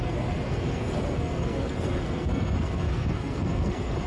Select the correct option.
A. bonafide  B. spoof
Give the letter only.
B